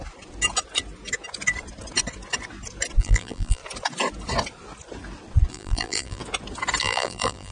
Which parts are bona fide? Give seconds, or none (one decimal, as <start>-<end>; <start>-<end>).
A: 0.0-3.0; 3.6-5.5; 6.2-6.8